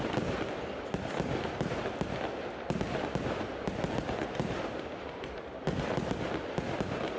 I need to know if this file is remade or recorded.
recorded